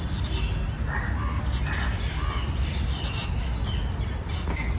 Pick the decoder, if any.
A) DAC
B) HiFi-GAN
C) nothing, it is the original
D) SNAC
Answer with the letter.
C